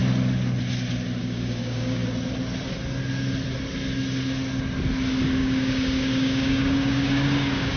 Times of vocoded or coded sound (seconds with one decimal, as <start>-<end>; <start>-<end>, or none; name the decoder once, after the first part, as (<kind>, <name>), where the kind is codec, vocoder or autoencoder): 1.2-2.0 (codec, DAC); 5.4-7.8